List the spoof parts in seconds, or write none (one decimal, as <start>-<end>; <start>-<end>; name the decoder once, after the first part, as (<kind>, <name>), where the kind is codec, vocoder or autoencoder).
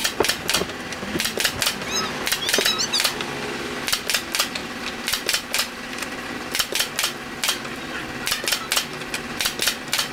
4.6-8.0 (vocoder, BigVGAN v2); 8.9-10.1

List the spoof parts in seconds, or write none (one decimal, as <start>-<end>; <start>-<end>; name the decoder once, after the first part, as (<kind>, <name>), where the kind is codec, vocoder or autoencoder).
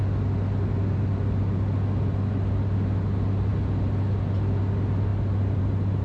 none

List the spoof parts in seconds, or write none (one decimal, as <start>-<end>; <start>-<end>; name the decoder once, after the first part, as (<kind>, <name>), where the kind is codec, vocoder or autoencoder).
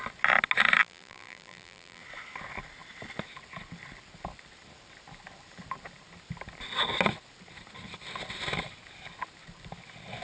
0.8-2.0 (vocoder, BigVGAN v2)